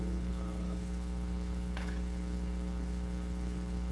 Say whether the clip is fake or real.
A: fake